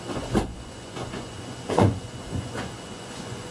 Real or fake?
fake